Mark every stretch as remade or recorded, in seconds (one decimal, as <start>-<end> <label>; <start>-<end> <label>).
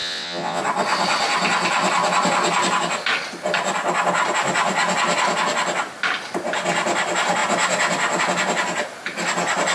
0.0-0.6 remade; 0.6-9.7 recorded